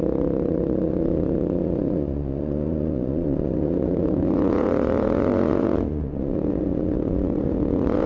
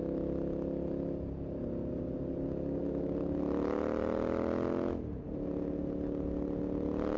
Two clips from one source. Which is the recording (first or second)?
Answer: second